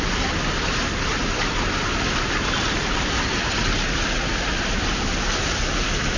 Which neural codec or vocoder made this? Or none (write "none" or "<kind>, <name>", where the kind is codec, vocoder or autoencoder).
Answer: none